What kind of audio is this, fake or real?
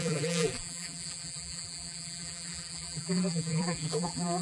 fake